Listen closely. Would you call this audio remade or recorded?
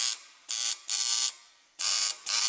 remade